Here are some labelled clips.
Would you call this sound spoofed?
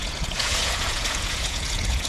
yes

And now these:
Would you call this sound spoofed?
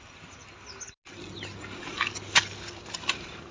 no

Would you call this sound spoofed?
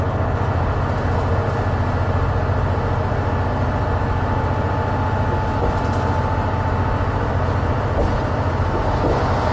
no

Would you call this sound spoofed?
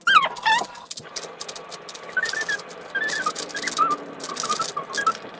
no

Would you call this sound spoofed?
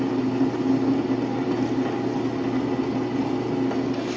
no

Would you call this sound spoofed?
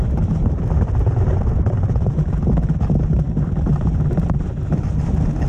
yes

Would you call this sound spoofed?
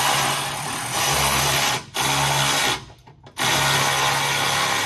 no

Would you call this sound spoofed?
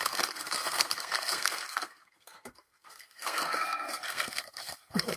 yes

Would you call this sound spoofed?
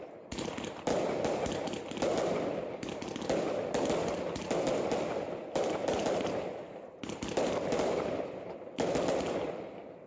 no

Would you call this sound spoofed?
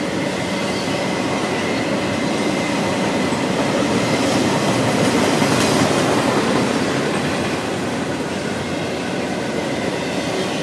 no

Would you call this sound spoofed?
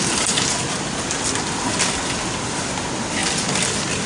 no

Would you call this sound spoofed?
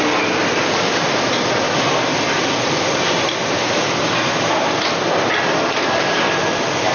no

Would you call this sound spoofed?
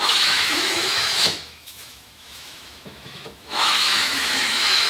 yes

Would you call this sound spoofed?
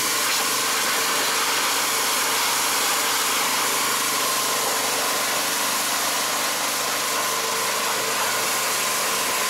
no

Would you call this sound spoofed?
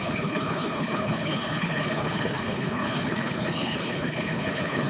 yes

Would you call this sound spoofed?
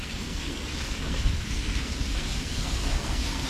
yes